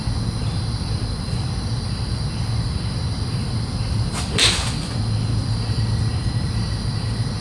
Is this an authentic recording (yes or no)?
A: yes